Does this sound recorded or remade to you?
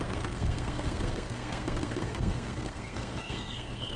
remade